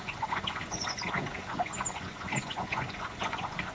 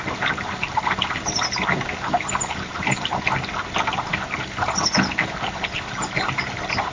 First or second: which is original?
second